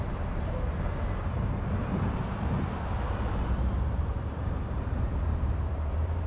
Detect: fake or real fake